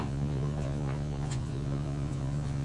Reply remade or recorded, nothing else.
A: remade